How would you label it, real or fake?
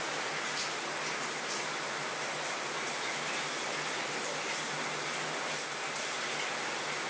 real